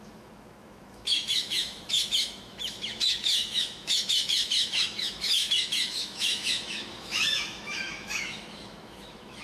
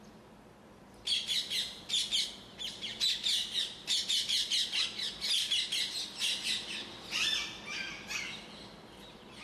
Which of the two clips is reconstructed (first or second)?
first